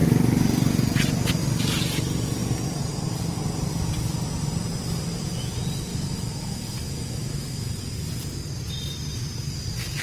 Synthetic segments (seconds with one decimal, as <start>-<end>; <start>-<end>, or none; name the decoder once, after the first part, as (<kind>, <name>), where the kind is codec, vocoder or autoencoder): 5.9-7.7 (autoencoder, DAC-VAE)